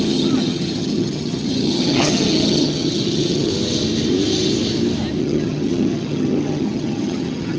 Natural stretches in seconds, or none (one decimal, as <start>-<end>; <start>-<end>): 3.5-5.2